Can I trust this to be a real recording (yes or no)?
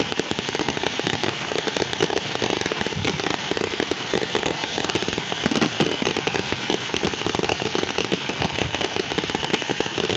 no